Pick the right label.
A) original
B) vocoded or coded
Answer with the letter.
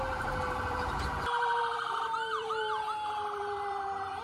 B